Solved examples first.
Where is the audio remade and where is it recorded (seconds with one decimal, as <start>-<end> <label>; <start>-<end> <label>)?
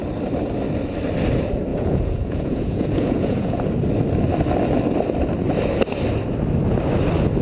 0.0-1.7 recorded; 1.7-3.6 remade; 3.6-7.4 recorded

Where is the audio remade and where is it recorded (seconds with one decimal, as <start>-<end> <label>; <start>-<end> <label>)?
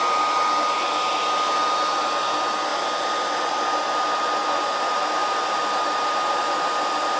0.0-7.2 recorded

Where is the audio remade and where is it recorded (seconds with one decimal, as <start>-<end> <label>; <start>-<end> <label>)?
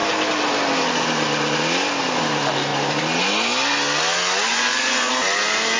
0.0-4.5 recorded; 4.5-5.1 remade; 5.1-5.8 recorded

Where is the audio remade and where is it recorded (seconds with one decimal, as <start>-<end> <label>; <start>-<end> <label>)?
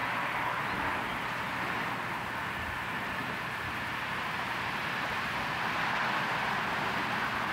0.0-3.2 recorded; 3.2-5.4 remade; 5.4-7.5 recorded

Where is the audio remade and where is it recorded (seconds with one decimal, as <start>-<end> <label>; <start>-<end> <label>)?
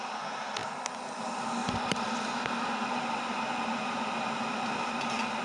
0.0-1.6 recorded; 1.6-2.2 remade; 2.2-5.4 recorded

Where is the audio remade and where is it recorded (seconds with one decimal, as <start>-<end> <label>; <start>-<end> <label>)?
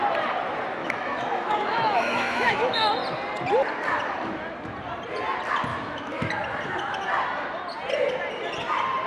0.0-0.8 recorded; 0.8-2.8 remade; 2.8-5.7 recorded; 5.7-6.3 remade; 6.3-9.1 recorded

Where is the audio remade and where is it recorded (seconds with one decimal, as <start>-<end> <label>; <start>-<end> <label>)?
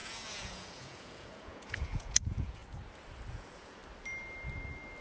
0.0-2.6 remade; 2.6-3.3 recorded; 3.3-3.8 remade; 3.8-5.0 recorded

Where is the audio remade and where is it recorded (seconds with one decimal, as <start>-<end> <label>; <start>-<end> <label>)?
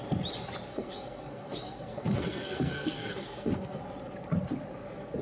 0.0-0.7 recorded; 0.7-3.8 remade; 3.8-5.2 recorded